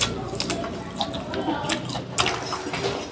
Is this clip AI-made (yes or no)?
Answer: no